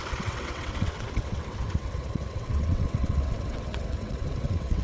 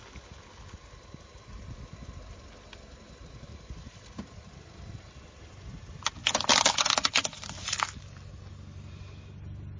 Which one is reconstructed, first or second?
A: first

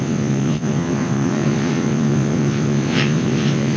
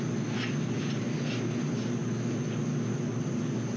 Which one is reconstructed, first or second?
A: first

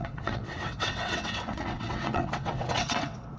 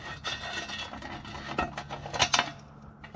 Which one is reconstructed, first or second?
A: first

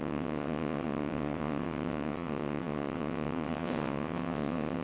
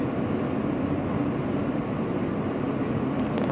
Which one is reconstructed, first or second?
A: first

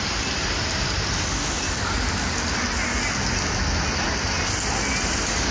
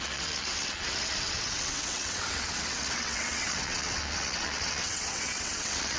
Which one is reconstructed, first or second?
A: second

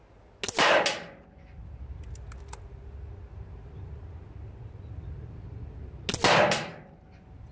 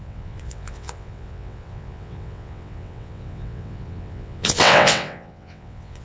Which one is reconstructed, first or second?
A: second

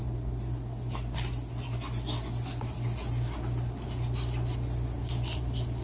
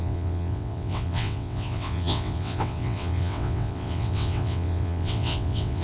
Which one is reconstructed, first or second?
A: second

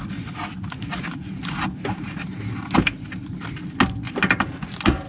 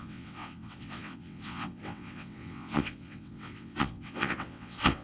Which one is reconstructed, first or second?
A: second